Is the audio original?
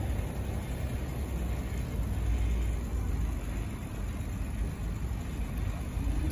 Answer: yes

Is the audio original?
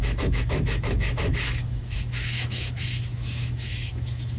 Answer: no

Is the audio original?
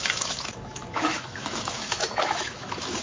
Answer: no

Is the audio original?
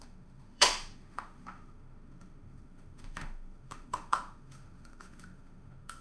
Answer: no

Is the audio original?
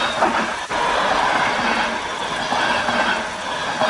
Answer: yes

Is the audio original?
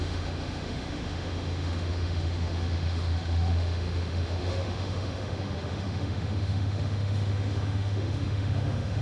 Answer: no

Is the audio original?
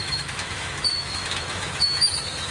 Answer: no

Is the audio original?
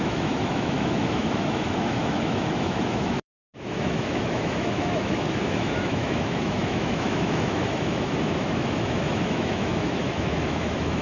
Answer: no